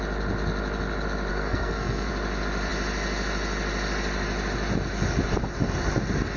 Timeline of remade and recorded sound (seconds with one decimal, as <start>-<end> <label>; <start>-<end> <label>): 0.0-1.3 recorded; 1.3-2.1 remade; 2.1-6.4 recorded